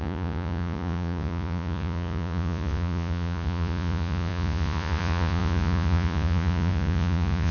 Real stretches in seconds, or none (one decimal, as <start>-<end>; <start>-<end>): none